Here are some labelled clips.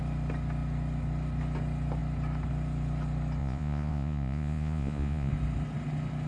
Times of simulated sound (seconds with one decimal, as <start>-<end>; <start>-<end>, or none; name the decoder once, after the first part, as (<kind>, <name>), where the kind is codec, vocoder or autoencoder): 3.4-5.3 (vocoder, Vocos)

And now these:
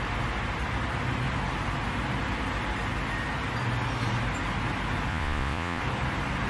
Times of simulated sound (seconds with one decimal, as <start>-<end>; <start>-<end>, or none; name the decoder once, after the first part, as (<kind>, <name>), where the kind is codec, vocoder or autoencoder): 5.1-5.8 (vocoder, Vocos)

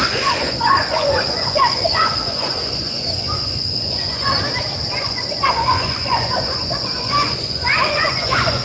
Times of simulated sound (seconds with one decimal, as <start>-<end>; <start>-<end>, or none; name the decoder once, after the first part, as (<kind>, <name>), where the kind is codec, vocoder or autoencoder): 0.0-4.3 (vocoder, Vocos); 5.0-8.6

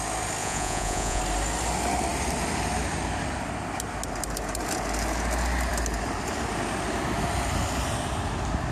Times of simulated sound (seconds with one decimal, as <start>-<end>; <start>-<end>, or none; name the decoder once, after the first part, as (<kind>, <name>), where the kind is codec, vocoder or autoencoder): 0.4-1.2 (vocoder, Vocos)

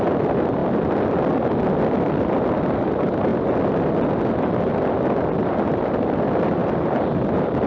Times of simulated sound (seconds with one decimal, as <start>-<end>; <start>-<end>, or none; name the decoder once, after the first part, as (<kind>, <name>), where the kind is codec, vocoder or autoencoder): none